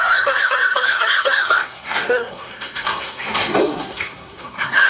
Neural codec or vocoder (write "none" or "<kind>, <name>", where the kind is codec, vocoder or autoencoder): codec, SNAC